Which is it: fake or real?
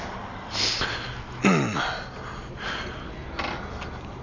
real